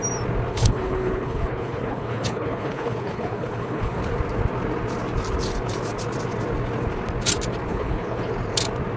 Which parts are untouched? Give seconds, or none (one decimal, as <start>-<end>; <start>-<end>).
0.0-0.5; 4.0-7.7; 8.3-9.0